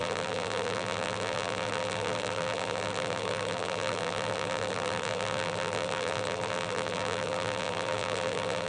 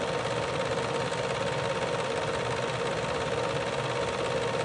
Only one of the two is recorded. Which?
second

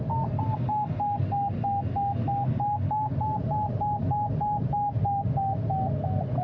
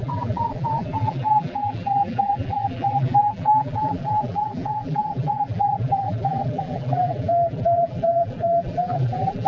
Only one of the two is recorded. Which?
first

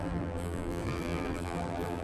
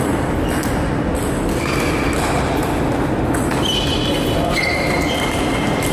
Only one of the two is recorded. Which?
second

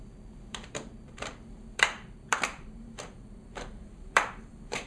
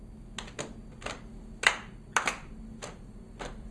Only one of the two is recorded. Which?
second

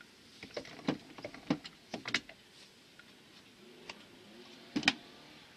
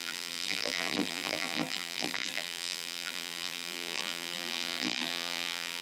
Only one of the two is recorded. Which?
first